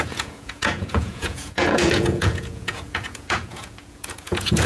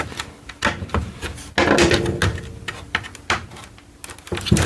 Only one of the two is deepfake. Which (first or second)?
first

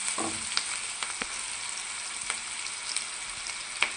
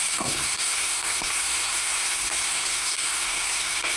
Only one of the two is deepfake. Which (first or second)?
second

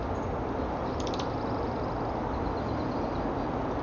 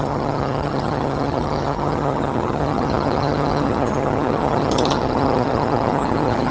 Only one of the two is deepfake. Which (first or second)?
second